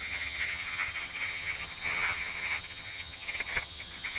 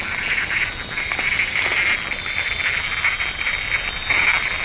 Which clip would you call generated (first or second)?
first